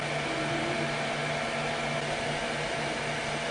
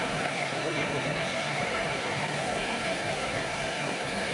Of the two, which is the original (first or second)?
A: first